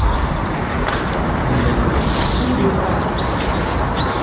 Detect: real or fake real